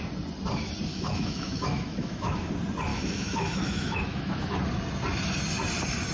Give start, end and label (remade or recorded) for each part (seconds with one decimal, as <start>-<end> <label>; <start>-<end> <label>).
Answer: 0.0-0.9 recorded; 0.9-2.5 remade; 2.5-2.9 recorded; 2.9-4.6 remade; 4.6-6.1 recorded